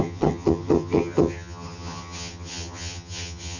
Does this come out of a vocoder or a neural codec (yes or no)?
yes